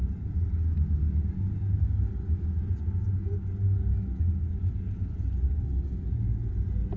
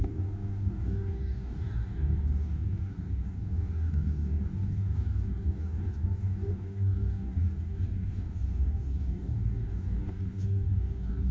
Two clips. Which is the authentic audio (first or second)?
first